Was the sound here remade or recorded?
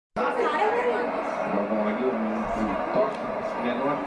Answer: recorded